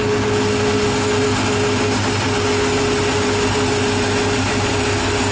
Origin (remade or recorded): recorded